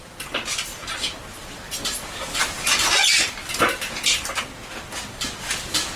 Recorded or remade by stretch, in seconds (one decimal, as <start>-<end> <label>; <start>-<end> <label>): 0.0-6.0 recorded